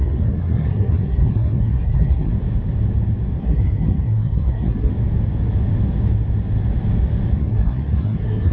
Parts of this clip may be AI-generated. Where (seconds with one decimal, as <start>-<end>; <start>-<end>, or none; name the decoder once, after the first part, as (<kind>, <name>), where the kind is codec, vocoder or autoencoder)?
0.0-2.3 (codec, SNAC); 3.4-4.9; 7.4-8.5